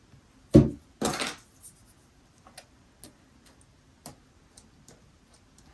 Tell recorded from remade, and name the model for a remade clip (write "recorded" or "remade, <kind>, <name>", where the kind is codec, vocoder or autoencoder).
recorded